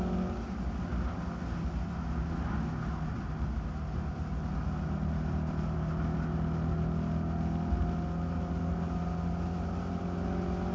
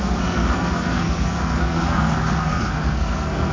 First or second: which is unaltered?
first